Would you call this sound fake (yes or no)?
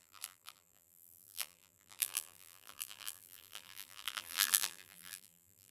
yes